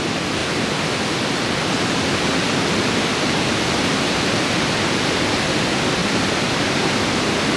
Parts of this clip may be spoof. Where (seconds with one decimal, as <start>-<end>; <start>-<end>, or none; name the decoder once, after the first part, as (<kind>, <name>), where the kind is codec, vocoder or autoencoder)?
0.4-5.0 (vocoder, BigVGAN v2); 6.0-6.9